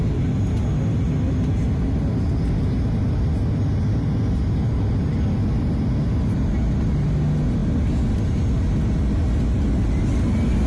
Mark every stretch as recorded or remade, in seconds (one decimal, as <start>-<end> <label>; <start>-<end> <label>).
0.0-10.7 recorded

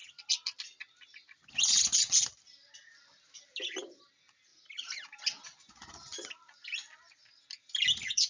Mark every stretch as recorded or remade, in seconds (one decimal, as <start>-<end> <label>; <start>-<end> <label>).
0.0-8.3 recorded

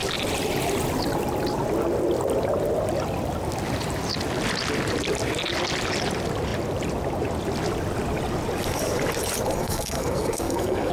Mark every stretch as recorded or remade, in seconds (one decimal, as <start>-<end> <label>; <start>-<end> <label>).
0.0-9.6 recorded; 9.6-10.9 remade

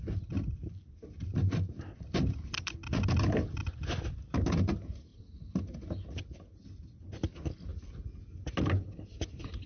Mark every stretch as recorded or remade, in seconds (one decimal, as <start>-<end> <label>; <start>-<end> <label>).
0.0-9.7 recorded

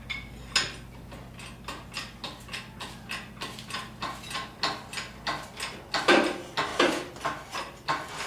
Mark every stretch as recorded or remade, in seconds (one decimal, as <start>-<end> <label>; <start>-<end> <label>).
0.0-8.3 recorded

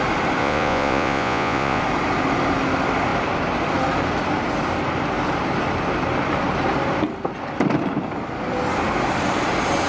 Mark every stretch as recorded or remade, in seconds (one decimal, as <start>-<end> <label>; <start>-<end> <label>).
0.0-0.4 recorded; 0.4-1.8 remade; 1.8-9.9 recorded

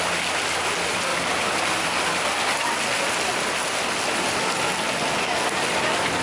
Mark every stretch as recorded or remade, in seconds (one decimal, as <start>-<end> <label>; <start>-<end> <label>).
0.0-6.2 recorded

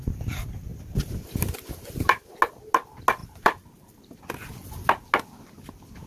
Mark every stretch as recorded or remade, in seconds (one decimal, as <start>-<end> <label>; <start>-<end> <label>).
0.0-0.7 recorded; 0.7-2.2 remade; 2.2-3.2 recorded; 3.2-4.2 remade; 4.2-6.1 recorded